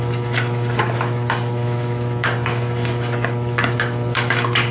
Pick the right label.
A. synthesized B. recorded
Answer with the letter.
A